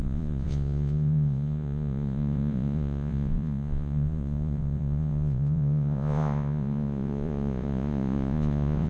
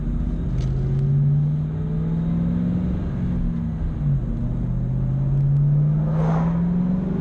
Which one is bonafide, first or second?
second